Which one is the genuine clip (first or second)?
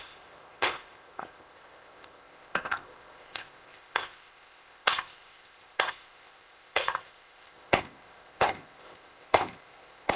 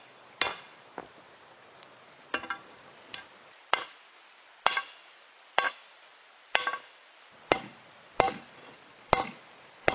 second